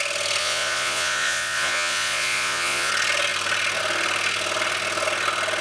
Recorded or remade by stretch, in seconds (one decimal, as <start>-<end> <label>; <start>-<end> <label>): 0.0-0.4 recorded; 0.4-2.9 remade; 2.9-5.6 recorded